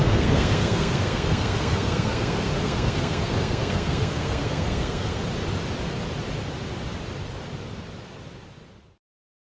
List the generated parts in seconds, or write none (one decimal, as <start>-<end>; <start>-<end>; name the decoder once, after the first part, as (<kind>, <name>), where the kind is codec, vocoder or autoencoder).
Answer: 0.0-5.2 (codec, SNAC)